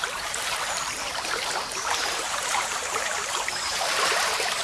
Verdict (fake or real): fake